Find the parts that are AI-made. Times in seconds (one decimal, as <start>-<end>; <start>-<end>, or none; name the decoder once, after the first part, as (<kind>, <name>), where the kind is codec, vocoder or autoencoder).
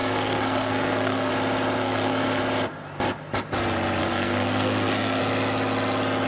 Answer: 0.0-1.3 (codec, SNAC); 1.8-2.4; 4.0-5.2